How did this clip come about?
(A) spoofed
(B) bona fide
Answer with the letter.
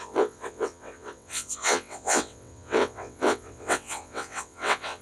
A